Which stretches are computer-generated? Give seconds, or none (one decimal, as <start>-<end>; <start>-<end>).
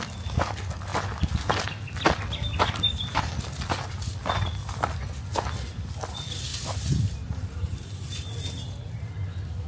6.5-8.3